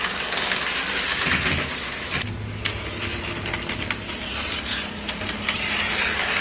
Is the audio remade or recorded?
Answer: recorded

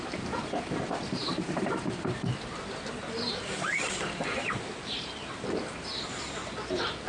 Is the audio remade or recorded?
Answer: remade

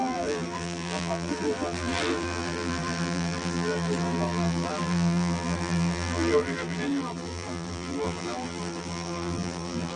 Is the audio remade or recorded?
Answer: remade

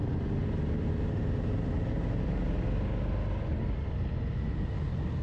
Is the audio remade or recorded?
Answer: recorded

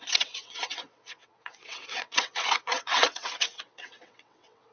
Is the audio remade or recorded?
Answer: remade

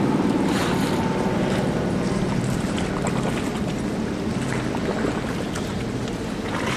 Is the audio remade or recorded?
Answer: recorded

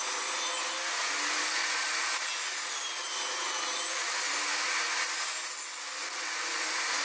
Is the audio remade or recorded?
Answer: recorded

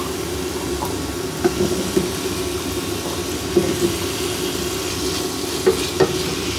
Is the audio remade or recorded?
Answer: recorded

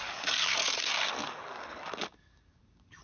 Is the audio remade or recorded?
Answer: remade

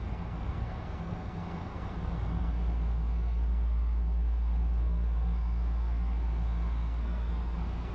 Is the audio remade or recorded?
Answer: remade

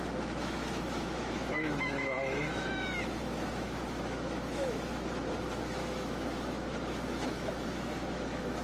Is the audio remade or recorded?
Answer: remade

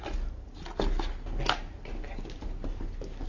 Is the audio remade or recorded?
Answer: recorded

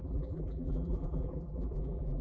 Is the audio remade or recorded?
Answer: remade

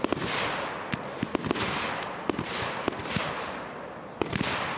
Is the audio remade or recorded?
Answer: recorded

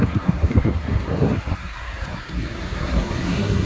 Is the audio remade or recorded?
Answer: remade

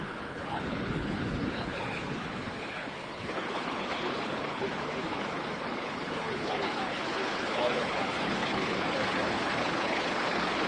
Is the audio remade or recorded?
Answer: remade